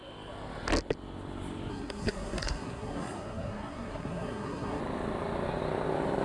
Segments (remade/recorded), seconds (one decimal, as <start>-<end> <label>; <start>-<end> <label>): 0.0-1.7 recorded; 1.7-4.8 remade; 4.8-6.2 recorded

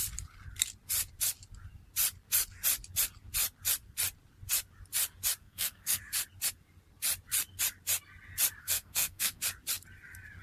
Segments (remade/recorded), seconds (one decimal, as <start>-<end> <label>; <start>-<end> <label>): 0.0-5.4 recorded; 5.4-6.0 remade; 6.0-8.6 recorded; 8.6-9.4 remade; 9.4-10.4 recorded

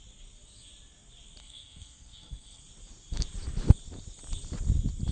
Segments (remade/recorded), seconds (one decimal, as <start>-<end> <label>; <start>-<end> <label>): 0.0-1.4 recorded; 1.4-2.6 remade; 2.6-5.1 recorded

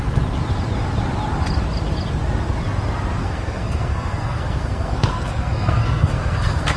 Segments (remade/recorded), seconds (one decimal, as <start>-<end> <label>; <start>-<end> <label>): 0.0-3.2 recorded; 3.2-6.8 remade

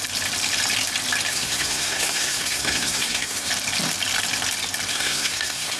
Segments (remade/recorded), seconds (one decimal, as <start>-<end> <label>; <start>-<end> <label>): 0.0-1.3 recorded; 1.3-3.5 remade; 3.5-4.9 recorded; 4.9-5.8 remade

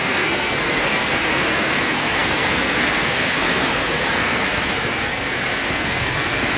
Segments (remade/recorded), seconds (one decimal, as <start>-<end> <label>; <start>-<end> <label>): 0.0-6.6 remade